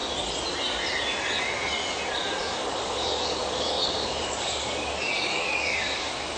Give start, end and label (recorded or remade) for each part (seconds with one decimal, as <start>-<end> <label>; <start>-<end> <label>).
0.0-2.4 recorded; 2.4-6.4 remade

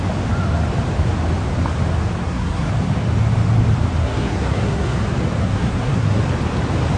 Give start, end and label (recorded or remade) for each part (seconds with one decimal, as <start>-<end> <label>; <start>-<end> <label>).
0.0-2.2 recorded; 2.2-2.7 remade; 2.7-4.0 recorded; 4.0-5.0 remade; 5.0-5.4 recorded; 5.4-6.2 remade; 6.2-7.0 recorded

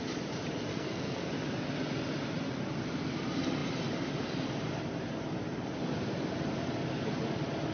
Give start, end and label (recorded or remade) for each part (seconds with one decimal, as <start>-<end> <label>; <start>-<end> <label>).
0.0-0.7 recorded; 0.7-1.3 remade; 1.3-7.7 recorded